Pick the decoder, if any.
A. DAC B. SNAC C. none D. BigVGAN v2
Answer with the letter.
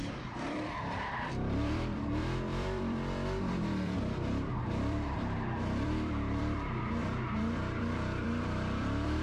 D